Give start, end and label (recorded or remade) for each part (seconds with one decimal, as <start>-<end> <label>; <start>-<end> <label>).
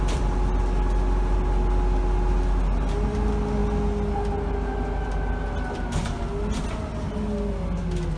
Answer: 0.0-8.2 recorded